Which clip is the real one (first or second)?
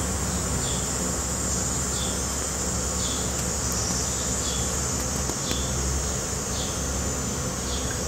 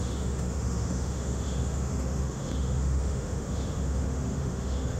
first